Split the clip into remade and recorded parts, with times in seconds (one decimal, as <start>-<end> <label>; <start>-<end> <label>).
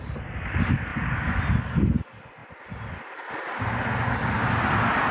0.0-0.9 recorded; 0.9-1.6 remade; 1.6-2.4 recorded; 2.4-3.3 remade; 3.3-5.1 recorded